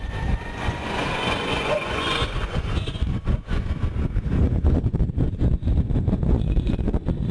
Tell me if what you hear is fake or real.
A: fake